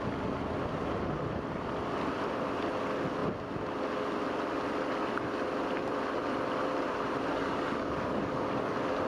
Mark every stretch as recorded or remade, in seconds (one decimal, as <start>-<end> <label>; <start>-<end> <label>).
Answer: 0.0-7.3 recorded; 7.3-8.7 remade; 8.7-9.1 recorded